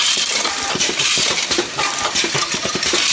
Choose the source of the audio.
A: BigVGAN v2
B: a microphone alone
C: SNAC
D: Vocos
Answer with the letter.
A